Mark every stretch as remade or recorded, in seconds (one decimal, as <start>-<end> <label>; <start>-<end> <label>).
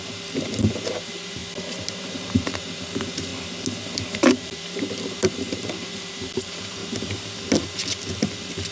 0.0-1.4 remade; 1.4-2.1 recorded; 2.1-3.3 remade; 3.3-4.3 recorded; 4.3-6.8 remade; 6.8-7.6 recorded; 7.6-8.7 remade